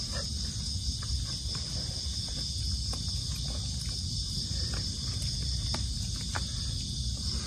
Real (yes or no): yes